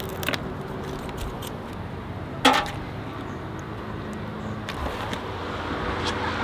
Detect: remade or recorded recorded